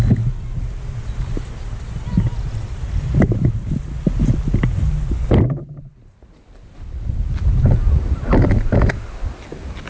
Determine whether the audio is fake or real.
real